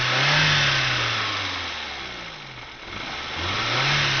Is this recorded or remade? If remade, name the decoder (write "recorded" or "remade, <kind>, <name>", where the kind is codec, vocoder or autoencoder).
recorded